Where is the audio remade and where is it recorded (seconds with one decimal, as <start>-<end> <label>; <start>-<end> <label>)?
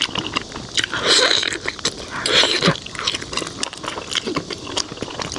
0.0-5.4 recorded